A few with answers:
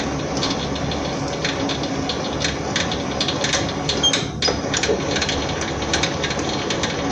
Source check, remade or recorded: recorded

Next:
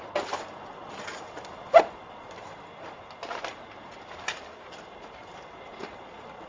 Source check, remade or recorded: recorded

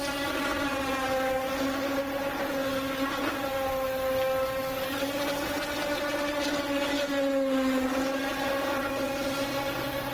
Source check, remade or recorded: recorded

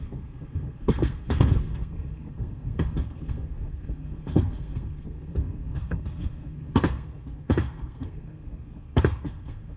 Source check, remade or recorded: remade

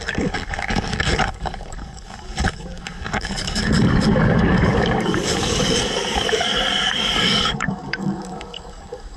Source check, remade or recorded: remade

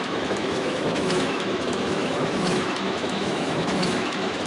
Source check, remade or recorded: remade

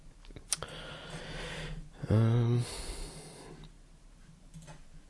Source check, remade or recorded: recorded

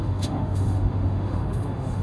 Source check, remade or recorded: remade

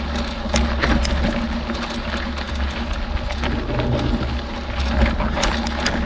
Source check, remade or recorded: recorded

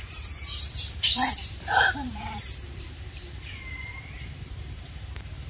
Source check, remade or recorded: remade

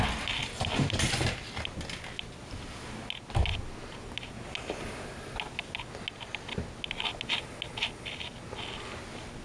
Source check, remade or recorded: recorded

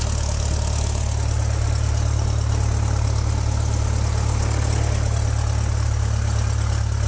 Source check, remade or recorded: recorded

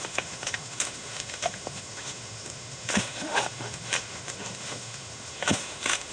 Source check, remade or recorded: remade